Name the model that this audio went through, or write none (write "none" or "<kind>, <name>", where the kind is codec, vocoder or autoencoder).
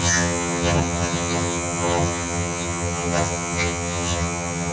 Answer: vocoder, HiFi-GAN